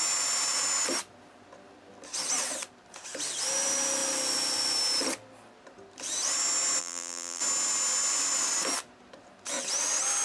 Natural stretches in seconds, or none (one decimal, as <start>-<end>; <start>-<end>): 0.0-6.8; 7.4-10.2